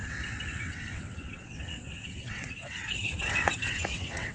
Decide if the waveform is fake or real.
fake